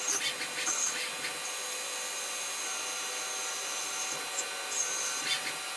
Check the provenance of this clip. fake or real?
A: real